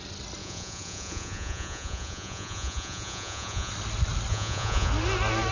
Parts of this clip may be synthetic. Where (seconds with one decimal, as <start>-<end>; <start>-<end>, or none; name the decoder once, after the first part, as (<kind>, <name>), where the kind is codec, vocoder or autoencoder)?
0.4-3.7 (vocoder, Vocos); 4.3-4.9